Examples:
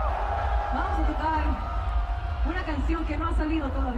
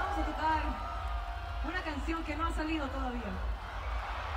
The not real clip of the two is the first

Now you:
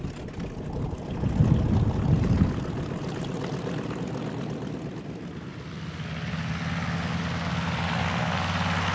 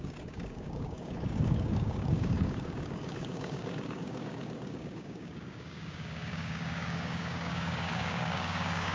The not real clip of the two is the second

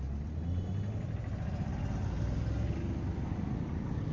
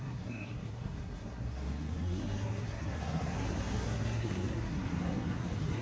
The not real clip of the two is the second